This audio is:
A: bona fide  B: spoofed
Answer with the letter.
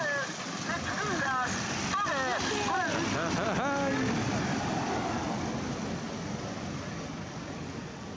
A